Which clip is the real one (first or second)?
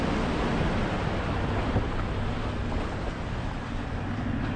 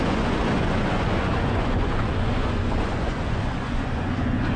first